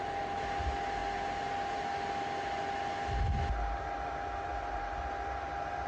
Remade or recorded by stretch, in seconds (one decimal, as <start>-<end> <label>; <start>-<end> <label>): 0.0-4.5 recorded; 4.5-5.0 remade; 5.0-5.9 recorded